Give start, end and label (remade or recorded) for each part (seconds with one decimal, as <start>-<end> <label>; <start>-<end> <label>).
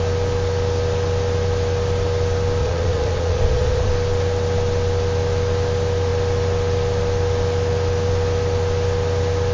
0.0-2.6 recorded; 2.6-3.9 remade; 3.9-9.5 recorded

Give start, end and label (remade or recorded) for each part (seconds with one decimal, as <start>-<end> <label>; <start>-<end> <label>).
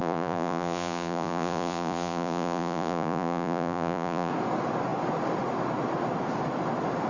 0.0-4.3 remade; 4.3-7.1 recorded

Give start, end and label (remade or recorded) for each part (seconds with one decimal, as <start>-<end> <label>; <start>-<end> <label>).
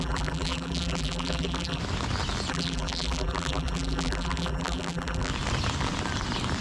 0.0-1.8 remade; 1.8-2.5 recorded; 2.5-5.3 remade; 5.3-6.6 recorded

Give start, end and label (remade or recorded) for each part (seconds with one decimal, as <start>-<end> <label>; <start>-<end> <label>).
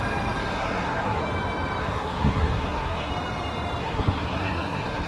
0.0-0.4 recorded; 0.4-1.2 remade; 1.2-1.8 recorded; 1.8-3.1 remade; 3.1-3.8 recorded; 3.8-5.1 remade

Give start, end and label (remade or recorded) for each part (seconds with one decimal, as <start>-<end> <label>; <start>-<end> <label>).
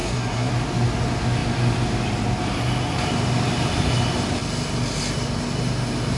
0.0-0.5 remade; 0.5-6.2 recorded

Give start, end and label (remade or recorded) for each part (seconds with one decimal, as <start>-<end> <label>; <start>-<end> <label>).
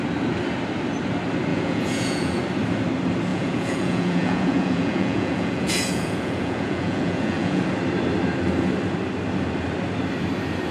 0.0-1.5 recorded; 1.5-2.4 remade; 2.4-3.3 recorded; 3.3-7.6 remade; 7.6-10.7 recorded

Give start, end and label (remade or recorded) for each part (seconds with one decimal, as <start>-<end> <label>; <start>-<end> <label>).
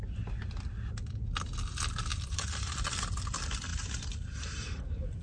0.0-2.1 recorded; 2.1-2.7 remade; 2.7-3.7 recorded; 3.7-4.8 remade; 4.8-5.2 recorded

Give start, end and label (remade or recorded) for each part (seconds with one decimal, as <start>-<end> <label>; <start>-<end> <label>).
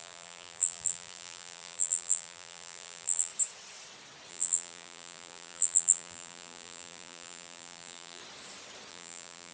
0.0-3.3 remade; 3.3-4.3 recorded; 4.3-8.2 remade; 8.2-8.9 recorded; 8.9-9.5 remade